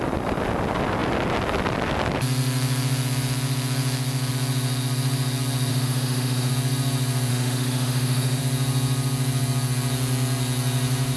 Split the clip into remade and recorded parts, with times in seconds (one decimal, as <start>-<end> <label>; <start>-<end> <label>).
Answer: 0.0-5.7 recorded; 5.7-6.5 remade; 6.5-7.3 recorded; 7.3-8.4 remade; 8.4-11.2 recorded